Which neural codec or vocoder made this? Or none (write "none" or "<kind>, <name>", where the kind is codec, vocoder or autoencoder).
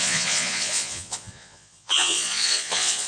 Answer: vocoder, Vocos